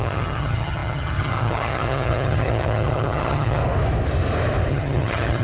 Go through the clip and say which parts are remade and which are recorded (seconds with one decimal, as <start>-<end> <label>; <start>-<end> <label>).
0.0-3.6 remade; 3.6-4.7 recorded; 4.7-5.4 remade